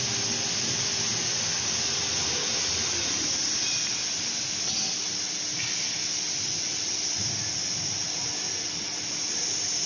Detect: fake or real real